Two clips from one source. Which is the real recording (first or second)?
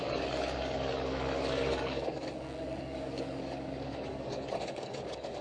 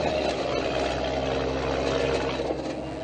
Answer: second